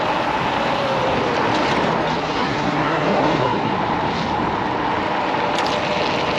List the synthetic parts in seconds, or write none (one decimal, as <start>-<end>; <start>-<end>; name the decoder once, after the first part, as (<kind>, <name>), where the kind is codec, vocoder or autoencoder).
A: 2.2-3.7 (codec, SNAC)